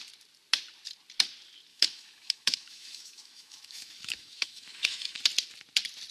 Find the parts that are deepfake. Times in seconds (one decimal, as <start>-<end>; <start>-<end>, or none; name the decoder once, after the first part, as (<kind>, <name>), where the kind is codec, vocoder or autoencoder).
1.7-5.2 (autoencoder, DAC-VAE)